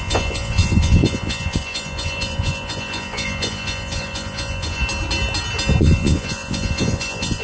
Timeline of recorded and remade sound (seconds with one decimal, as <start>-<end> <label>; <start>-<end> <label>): 0.0-4.8 remade; 4.8-5.8 recorded; 5.8-7.4 remade

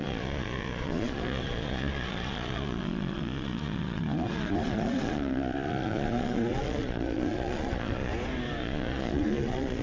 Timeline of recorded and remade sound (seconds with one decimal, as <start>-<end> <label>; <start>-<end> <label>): 0.0-8.1 remade; 8.1-8.6 recorded; 8.6-9.8 remade

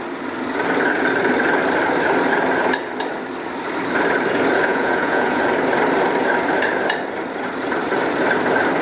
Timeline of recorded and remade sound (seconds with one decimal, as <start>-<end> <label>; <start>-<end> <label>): 0.0-4.7 recorded; 4.7-5.4 remade; 5.4-8.8 recorded

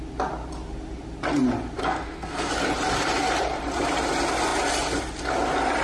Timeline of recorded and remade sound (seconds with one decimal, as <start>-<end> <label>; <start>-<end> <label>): 0.0-1.8 recorded; 1.8-2.5 remade; 2.5-5.8 recorded

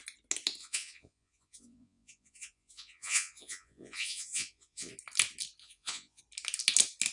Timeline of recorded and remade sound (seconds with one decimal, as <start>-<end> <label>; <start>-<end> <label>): 0.0-0.6 recorded; 0.6-4.9 remade; 4.9-5.6 recorded; 5.6-6.2 remade; 6.2-7.1 recorded